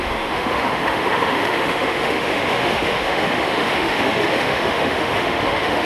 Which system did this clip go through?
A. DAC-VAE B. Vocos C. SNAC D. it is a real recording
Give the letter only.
A